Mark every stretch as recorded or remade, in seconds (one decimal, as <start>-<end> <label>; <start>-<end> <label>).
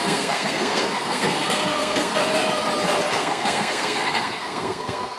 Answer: 0.0-2.2 remade; 2.2-3.1 recorded; 3.1-5.2 remade